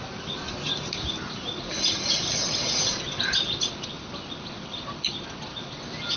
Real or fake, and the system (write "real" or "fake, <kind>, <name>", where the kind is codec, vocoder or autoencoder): real